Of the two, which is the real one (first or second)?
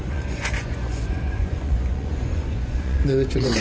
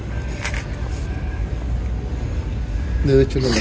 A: second